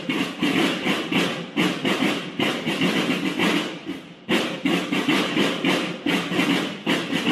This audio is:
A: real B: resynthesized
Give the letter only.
A